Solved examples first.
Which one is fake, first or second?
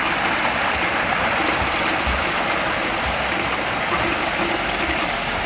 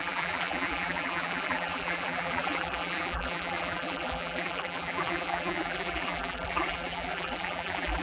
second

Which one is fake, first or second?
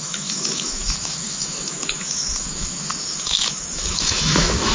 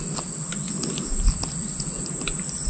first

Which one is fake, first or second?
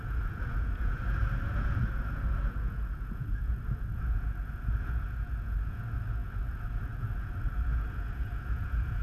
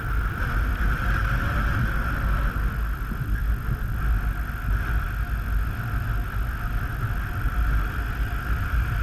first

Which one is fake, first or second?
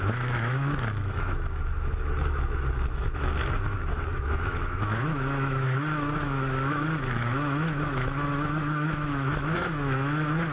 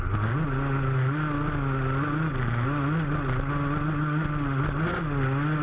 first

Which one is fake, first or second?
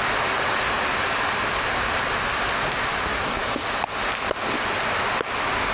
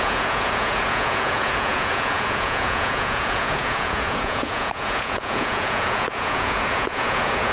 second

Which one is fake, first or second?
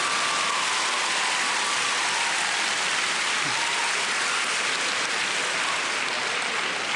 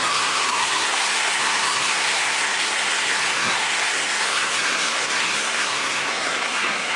second